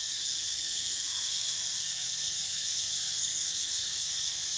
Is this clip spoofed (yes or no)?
yes